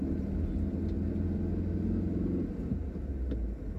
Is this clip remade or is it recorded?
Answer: recorded